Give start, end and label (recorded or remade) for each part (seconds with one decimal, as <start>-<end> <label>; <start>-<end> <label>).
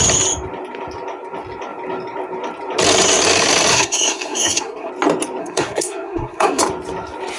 0.0-3.7 recorded; 3.7-4.9 remade; 4.9-5.4 recorded; 5.4-6.6 remade; 6.6-7.4 recorded